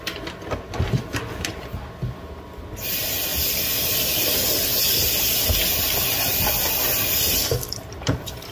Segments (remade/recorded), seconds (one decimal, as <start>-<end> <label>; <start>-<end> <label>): 0.0-7.4 recorded; 7.4-8.5 remade

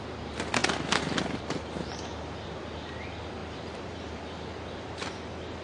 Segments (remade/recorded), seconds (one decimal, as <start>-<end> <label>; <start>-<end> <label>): 0.0-3.4 recorded; 3.4-4.2 remade; 4.2-5.6 recorded

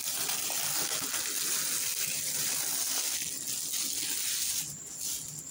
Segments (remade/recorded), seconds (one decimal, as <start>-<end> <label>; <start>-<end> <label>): 0.0-5.5 recorded

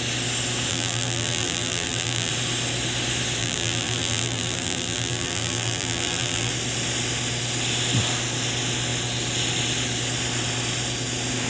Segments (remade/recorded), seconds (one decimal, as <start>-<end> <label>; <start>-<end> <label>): 0.0-0.7 recorded; 0.7-2.3 remade; 2.3-3.4 recorded; 3.4-6.5 remade; 6.5-11.5 recorded

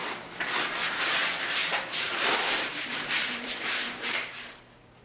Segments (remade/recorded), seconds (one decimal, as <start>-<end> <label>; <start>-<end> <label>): 0.0-1.6 recorded; 1.6-4.6 remade; 4.6-5.0 recorded

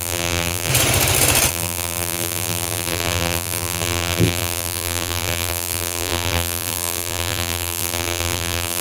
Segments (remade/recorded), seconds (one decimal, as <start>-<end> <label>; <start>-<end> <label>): 0.0-0.7 remade; 0.7-1.5 recorded; 1.5-8.8 remade